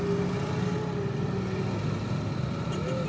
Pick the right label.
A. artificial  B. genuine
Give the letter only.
B